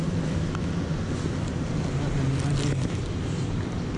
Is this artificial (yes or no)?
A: no